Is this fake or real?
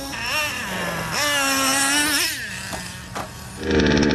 real